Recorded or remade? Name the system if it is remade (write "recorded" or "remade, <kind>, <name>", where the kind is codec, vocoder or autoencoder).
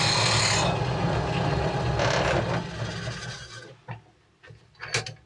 recorded